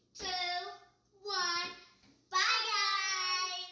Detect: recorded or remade recorded